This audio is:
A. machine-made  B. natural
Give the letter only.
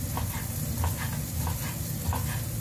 B